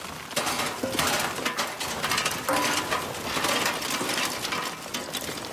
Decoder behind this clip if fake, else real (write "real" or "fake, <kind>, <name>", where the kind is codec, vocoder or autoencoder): real